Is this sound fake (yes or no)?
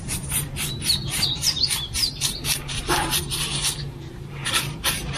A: yes